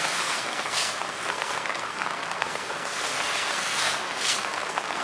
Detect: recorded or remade remade